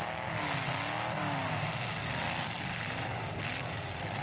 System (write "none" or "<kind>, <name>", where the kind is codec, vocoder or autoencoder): none